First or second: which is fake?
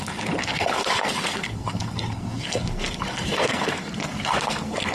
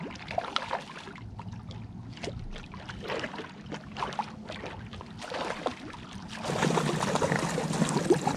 first